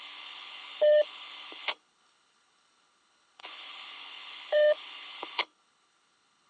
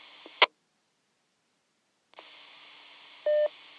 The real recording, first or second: second